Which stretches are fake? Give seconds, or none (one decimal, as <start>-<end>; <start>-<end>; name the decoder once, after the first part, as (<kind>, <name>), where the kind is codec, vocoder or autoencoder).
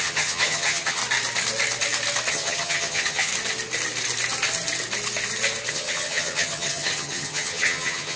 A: 0.0-1.0 (vocoder, HiFi-GAN); 2.3-3.3; 5.7-8.2